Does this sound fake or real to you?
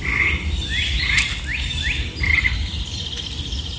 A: real